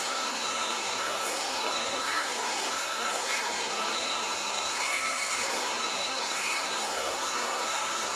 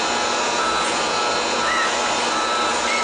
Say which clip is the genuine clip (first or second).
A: second